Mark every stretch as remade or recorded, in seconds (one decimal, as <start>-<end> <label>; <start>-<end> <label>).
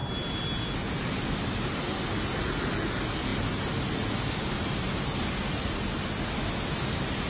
0.0-7.3 recorded